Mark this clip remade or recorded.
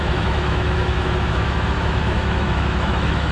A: remade